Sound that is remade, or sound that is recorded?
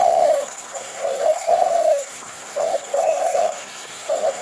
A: remade